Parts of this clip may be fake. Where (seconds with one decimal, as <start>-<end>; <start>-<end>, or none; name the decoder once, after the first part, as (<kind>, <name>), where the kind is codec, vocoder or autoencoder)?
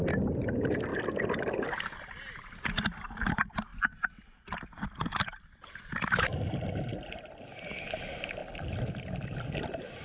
0.0-0.9 (vocoder, BigVGAN v2); 2.5-8.4; 9.0-10.0